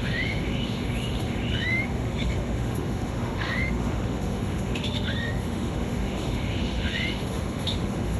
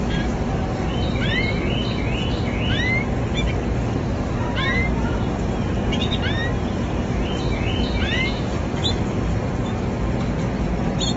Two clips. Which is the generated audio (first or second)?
first